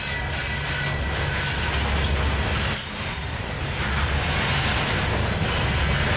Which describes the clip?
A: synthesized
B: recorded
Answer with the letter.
B